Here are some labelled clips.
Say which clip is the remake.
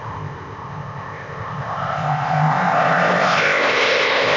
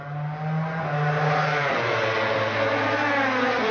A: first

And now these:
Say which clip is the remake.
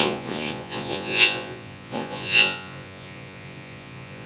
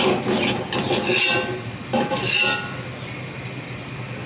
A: first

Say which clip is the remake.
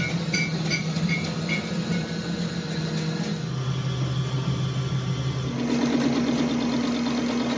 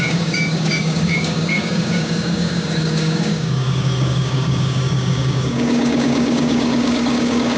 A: second